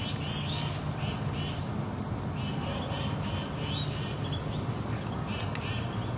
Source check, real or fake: real